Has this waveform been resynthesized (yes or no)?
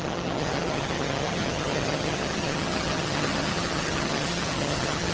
yes